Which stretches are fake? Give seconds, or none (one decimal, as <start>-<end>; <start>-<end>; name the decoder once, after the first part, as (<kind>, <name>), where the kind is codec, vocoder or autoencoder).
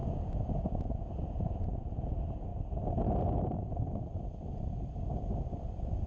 0.0-1.9 (vocoder, Vocos)